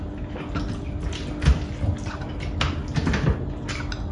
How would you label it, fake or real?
real